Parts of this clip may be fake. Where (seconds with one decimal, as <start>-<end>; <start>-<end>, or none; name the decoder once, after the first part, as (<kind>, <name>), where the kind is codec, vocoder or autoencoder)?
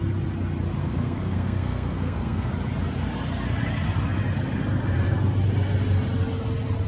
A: 0.8-2.5 (codec, SNAC)